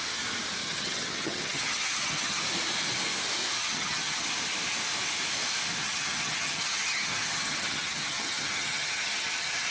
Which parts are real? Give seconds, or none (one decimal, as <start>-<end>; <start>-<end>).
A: 0.0-0.6; 2.4-3.6; 4.3-5.8